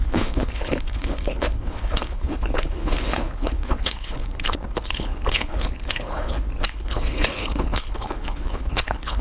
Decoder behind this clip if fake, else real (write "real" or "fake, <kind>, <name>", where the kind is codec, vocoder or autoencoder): fake, codec, HILCodec